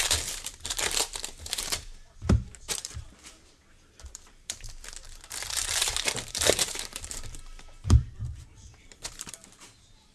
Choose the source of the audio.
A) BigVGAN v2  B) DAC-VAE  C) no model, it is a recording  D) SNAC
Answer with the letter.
A